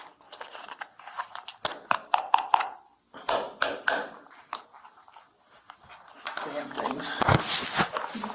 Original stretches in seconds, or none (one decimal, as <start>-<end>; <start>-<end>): 0.0-8.3